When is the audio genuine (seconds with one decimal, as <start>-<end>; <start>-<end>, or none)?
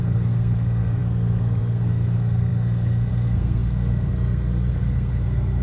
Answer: none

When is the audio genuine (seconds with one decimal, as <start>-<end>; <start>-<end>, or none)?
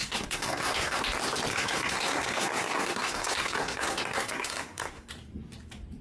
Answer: 1.0-1.5; 5.1-6.0